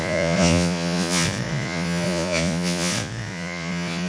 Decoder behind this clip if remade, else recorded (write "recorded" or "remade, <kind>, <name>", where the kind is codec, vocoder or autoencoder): remade, vocoder, Vocos